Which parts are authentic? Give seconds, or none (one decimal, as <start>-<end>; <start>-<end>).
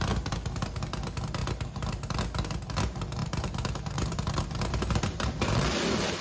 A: 0.0-3.2; 5.3-6.2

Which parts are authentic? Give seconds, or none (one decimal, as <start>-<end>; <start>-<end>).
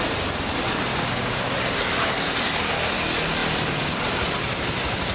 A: 0.0-0.9; 1.5-5.1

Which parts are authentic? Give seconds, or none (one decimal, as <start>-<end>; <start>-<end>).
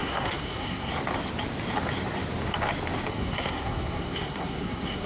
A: 0.9-3.1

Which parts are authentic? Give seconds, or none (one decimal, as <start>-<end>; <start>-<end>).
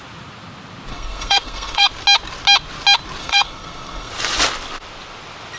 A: 0.0-0.9; 1.9-3.2; 4.1-5.6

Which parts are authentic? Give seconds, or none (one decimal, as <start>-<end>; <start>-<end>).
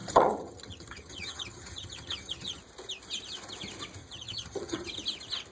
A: 2.6-4.0; 4.9-5.5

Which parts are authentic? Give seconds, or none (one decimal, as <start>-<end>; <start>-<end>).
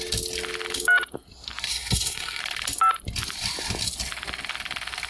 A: 0.0-1.7; 2.4-5.1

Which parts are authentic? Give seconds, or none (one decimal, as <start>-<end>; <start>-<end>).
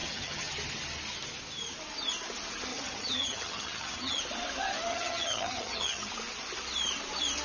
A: 0.5-2.7; 4.2-4.9; 6.1-7.4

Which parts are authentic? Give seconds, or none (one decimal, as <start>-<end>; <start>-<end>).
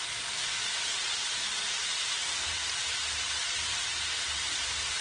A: 0.0-5.0